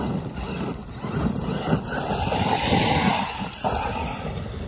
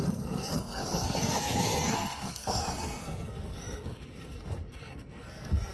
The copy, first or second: second